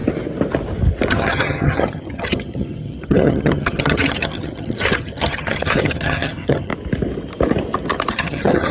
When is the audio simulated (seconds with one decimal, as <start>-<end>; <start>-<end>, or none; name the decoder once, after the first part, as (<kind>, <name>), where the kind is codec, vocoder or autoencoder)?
1.1-6.7 (vocoder, HiFi-GAN); 8.1-8.7